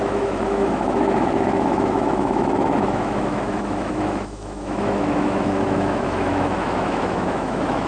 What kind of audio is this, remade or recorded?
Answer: remade